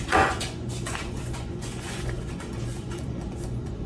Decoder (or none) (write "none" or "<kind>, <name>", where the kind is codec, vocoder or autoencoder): vocoder, Vocos